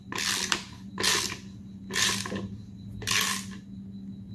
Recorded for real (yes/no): yes